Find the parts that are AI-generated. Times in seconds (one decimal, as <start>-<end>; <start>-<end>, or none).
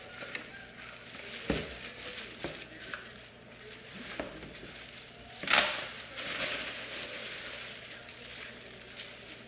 none